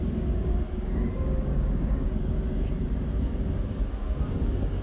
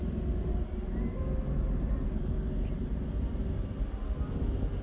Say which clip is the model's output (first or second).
first